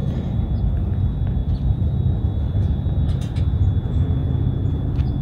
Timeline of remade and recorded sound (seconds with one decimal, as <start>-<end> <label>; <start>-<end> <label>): 0.0-1.4 recorded; 1.4-3.4 remade; 3.4-4.2 recorded; 4.2-5.2 remade